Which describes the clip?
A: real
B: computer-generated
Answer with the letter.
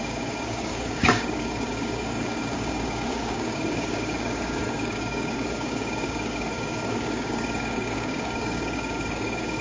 B